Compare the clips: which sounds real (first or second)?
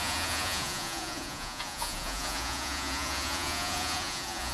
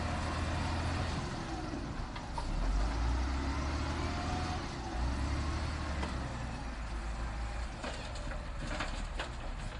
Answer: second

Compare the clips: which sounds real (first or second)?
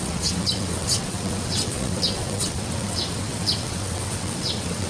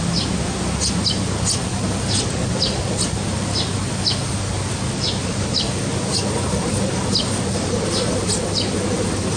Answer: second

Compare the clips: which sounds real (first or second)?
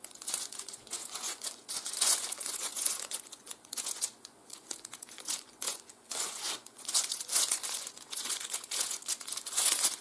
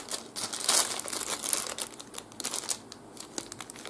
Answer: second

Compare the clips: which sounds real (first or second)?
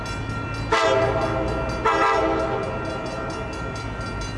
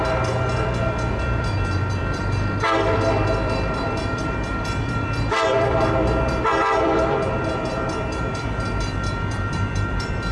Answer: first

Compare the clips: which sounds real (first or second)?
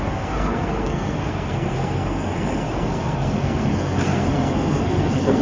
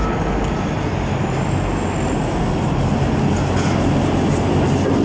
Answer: second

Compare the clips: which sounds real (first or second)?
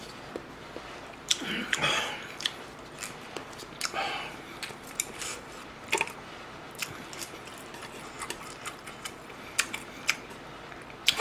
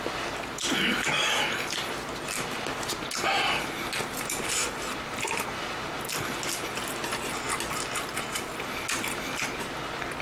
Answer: second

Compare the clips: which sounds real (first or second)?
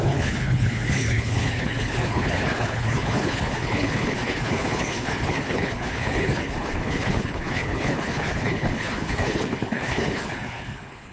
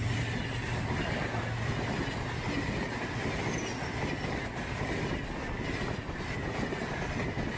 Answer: second